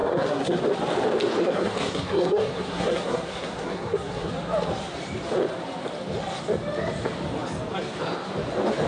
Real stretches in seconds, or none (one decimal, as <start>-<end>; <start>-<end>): 0.6-1.4; 4.3-8.9